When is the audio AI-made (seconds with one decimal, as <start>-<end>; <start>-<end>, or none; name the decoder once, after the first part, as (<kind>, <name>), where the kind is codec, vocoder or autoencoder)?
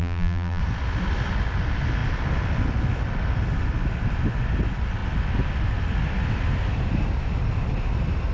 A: 0.0-0.6 (vocoder, BigVGAN v2)